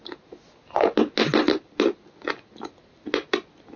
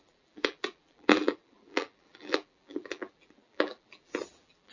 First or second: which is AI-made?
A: second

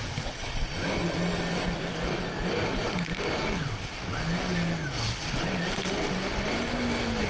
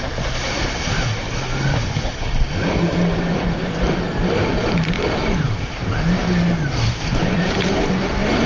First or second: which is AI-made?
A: second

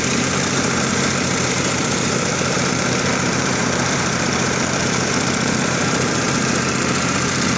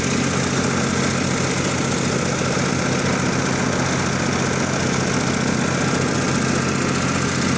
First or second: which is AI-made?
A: first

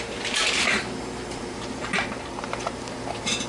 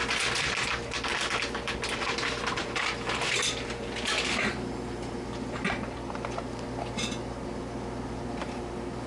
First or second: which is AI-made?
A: first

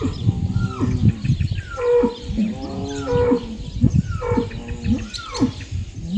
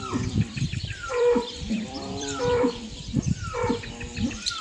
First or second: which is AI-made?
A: second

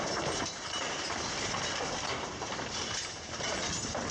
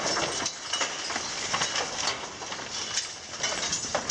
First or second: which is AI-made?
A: first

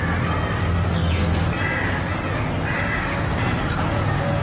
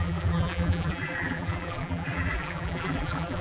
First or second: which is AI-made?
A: second